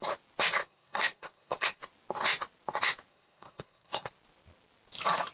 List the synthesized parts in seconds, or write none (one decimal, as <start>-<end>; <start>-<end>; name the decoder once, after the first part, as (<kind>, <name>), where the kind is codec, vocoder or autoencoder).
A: 0.6-1.8 (codec, SNAC); 3.1-4.1